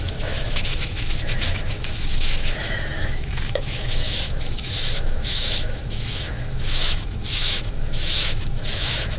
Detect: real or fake fake